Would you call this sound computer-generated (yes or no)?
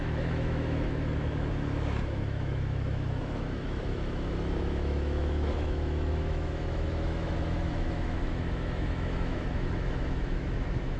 yes